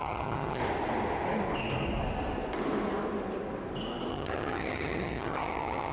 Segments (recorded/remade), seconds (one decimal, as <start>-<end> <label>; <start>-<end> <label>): 0.0-0.6 remade; 0.6-4.1 recorded; 4.1-5.9 remade